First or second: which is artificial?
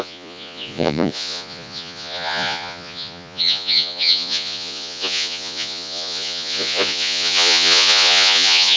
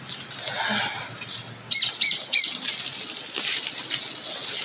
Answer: first